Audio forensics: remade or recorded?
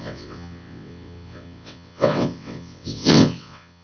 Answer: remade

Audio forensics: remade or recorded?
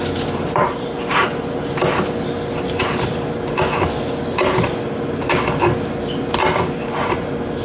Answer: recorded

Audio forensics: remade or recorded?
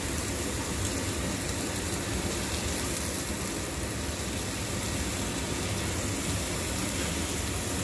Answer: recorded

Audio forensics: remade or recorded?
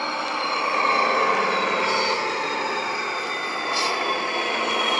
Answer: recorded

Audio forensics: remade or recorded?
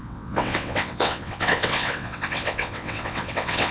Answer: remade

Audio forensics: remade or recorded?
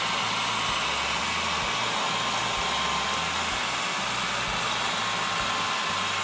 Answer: recorded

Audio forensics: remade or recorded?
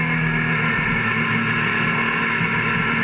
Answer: recorded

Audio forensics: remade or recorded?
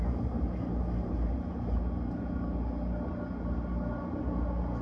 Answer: recorded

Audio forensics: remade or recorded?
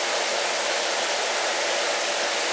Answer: recorded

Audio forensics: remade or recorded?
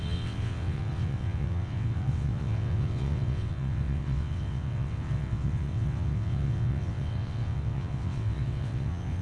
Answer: remade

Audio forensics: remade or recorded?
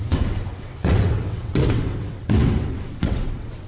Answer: remade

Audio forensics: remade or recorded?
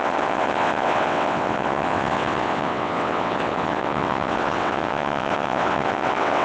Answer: remade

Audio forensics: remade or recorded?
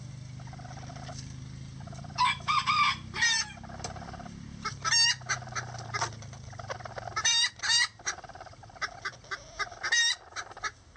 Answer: recorded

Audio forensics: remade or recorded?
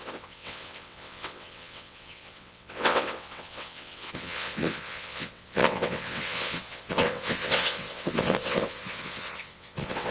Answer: remade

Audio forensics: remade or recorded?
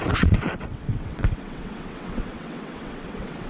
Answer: remade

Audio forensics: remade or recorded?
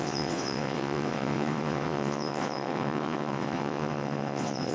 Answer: remade